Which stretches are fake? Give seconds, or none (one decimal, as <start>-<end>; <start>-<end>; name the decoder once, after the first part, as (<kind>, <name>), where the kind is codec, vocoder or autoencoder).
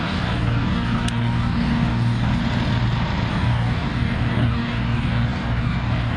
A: 0.0-2.4 (codec, DAC); 3.3-6.2